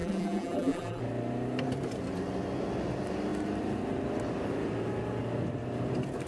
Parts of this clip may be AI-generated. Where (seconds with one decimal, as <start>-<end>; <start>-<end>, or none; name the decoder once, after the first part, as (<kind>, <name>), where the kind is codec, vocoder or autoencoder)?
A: 0.0-1.0 (vocoder, BigVGAN v2)